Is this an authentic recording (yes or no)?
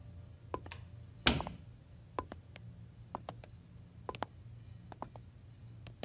yes